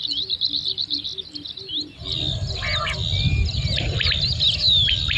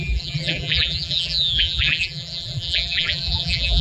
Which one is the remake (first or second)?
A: second